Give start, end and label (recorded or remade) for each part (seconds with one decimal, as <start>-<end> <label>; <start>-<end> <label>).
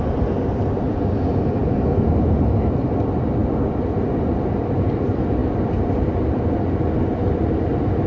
0.0-8.1 recorded